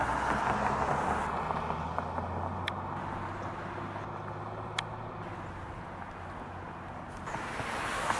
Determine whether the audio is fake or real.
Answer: real